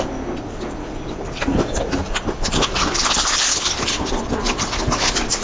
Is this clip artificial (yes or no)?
yes